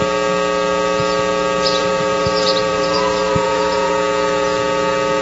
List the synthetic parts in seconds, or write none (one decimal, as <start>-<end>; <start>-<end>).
1.8-3.9